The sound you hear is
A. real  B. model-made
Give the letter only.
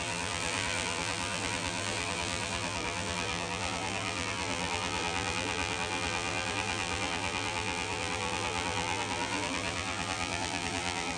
B